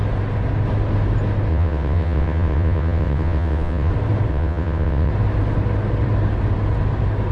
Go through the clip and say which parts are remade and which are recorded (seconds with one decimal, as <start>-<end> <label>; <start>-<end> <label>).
0.0-1.5 recorded; 1.5-3.9 remade; 3.9-4.3 recorded; 4.3-5.1 remade; 5.1-7.3 recorded